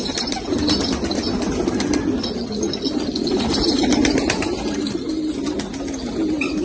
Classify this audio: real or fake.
real